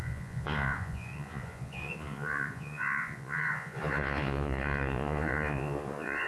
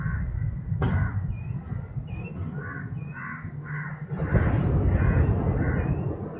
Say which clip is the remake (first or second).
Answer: first